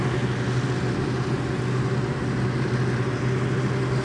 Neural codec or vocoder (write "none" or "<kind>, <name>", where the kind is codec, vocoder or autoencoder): none